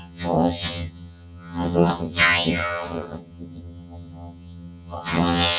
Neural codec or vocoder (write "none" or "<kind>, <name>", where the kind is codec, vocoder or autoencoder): vocoder, HiFi-GAN